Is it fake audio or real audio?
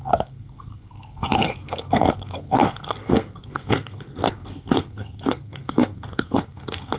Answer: fake